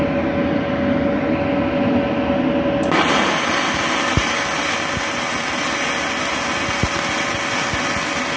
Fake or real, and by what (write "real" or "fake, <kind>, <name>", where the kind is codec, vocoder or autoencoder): real